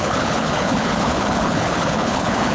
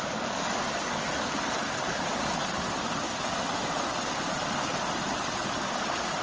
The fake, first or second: first